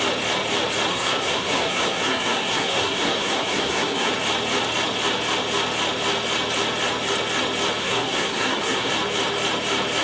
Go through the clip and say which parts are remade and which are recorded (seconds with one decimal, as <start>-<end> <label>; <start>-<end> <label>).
0.0-0.9 recorded; 0.9-4.1 remade; 4.1-7.8 recorded; 7.8-8.9 remade; 8.9-10.0 recorded